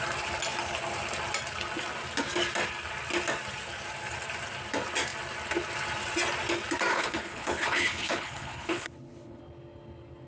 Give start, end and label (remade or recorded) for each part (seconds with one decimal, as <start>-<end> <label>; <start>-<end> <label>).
0.0-6.9 recorded; 6.9-9.4 remade; 9.4-10.3 recorded